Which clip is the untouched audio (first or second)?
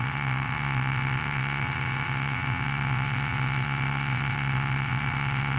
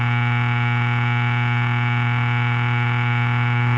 second